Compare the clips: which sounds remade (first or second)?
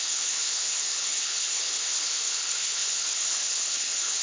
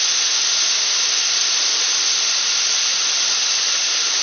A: first